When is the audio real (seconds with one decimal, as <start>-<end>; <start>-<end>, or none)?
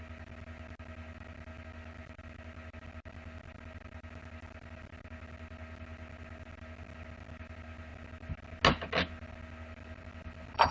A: 0.0-10.7